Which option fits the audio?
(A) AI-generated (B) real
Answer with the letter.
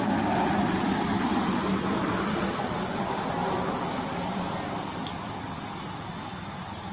B